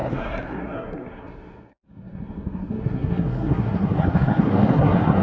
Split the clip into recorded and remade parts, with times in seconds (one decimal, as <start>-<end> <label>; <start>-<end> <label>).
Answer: 0.0-5.2 remade